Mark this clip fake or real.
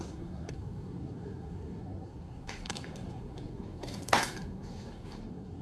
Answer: fake